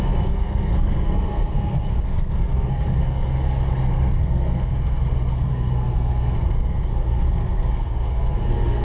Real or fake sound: fake